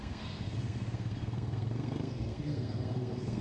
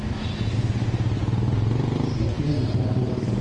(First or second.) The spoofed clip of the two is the first